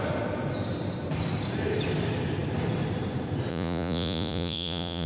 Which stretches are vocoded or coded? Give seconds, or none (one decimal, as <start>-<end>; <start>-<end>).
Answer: 3.5-5.1